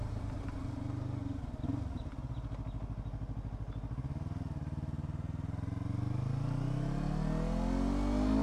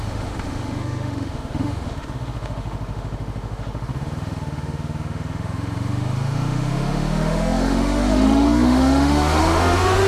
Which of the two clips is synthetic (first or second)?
second